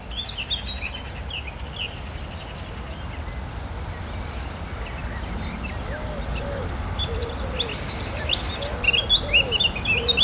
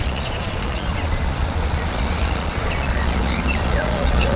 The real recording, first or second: first